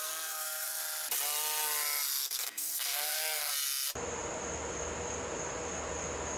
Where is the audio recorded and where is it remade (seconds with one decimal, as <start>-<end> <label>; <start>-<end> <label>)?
0.0-0.8 remade; 0.8-2.2 recorded; 2.2-3.5 remade; 3.5-6.4 recorded